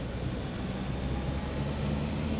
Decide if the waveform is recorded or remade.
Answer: recorded